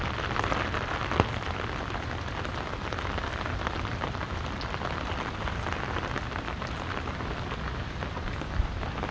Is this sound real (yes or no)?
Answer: yes